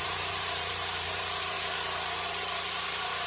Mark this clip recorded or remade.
remade